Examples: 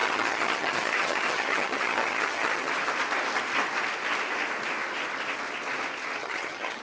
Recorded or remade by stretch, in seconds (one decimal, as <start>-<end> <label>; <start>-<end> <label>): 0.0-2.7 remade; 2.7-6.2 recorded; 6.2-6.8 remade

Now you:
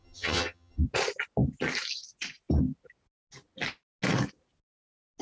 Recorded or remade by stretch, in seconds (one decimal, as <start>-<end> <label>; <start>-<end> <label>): 0.0-0.8 remade; 0.8-5.2 recorded

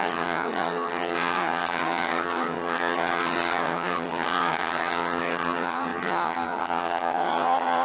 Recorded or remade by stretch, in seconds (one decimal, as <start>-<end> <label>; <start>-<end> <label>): 0.0-7.8 remade

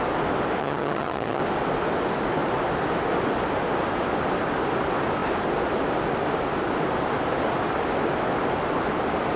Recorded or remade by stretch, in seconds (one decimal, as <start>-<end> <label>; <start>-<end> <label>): 0.0-0.6 recorded; 0.6-1.4 remade; 1.4-9.4 recorded

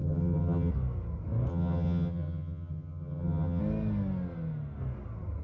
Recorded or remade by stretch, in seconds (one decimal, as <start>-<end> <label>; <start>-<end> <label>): 0.0-0.7 remade; 0.7-1.5 recorded; 1.5-3.6 remade; 3.6-5.4 recorded